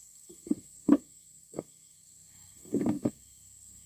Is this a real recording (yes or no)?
no